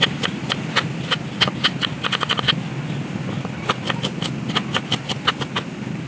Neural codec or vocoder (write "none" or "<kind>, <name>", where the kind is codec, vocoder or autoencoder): none